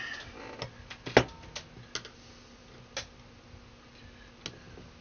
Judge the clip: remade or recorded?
recorded